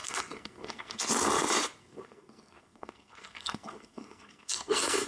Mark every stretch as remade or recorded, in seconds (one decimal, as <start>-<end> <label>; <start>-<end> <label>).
0.0-1.0 remade; 1.0-1.8 recorded; 1.8-5.1 remade